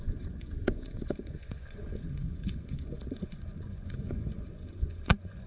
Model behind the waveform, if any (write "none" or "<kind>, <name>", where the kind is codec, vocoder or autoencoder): vocoder, Vocos